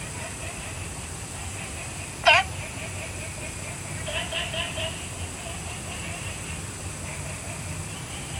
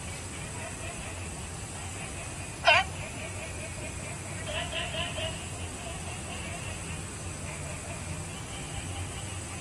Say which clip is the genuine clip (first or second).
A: second